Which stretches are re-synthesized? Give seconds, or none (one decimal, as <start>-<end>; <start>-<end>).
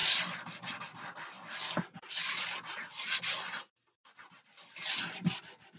none